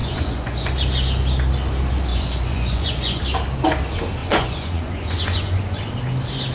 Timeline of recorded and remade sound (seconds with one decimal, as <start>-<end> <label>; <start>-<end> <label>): 0.0-0.7 remade; 0.7-2.1 recorded; 2.1-3.2 remade; 3.2-4.2 recorded; 4.2-5.8 remade; 5.8-6.5 recorded